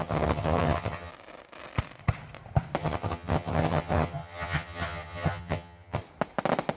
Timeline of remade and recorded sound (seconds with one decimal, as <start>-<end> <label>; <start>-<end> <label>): 0.0-1.1 remade; 1.1-2.8 recorded; 2.8-6.0 remade; 6.0-6.8 recorded